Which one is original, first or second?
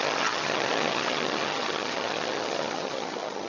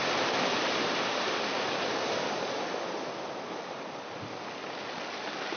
second